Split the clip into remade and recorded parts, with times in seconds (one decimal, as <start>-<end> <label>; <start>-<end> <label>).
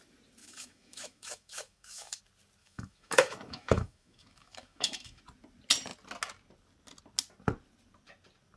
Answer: 0.0-0.4 recorded; 0.4-2.2 remade; 2.2-2.6 recorded; 2.6-5.2 remade; 5.2-8.6 recorded